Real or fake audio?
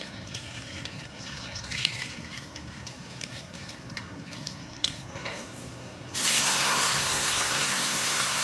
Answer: fake